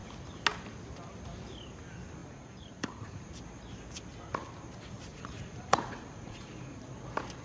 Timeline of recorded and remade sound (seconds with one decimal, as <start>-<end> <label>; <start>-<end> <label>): 0.0-2.2 recorded; 2.2-3.3 remade; 3.3-5.1 recorded; 5.1-6.8 remade; 6.8-7.4 recorded